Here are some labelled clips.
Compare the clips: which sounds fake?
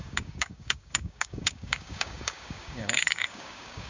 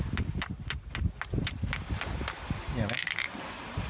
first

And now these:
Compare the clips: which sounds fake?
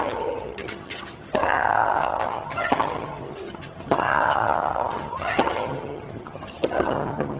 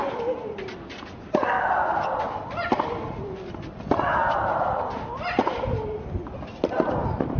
first